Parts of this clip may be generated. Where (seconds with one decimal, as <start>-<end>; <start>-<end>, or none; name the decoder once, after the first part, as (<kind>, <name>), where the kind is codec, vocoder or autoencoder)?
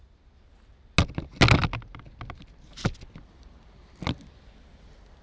none